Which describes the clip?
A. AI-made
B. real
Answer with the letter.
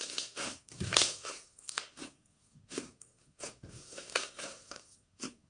A